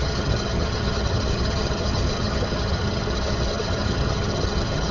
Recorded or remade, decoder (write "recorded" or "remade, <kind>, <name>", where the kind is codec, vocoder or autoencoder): remade, vocoder, HiFi-GAN